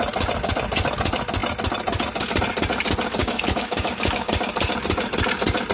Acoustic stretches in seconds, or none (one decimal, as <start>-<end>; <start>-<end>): 0.0-3.2; 4.3-5.7